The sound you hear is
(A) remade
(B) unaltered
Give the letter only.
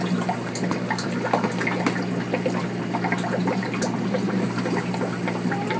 B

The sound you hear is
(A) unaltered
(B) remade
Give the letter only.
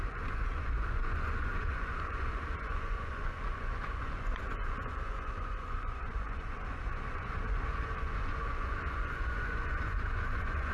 B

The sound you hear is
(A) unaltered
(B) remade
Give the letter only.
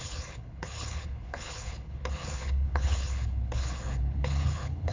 B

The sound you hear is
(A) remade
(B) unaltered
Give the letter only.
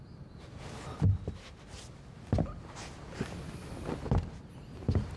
B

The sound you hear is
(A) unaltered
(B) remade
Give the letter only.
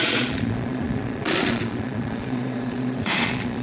B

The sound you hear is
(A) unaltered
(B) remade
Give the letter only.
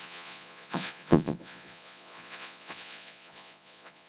B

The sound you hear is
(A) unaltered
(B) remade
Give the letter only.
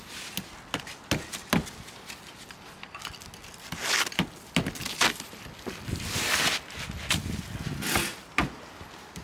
A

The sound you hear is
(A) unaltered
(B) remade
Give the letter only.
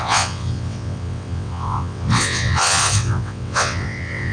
B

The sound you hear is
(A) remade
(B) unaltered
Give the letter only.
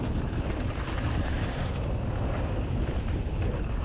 B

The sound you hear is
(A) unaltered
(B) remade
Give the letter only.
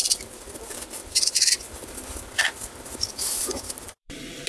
B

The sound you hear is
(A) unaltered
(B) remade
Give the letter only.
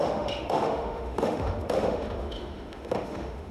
B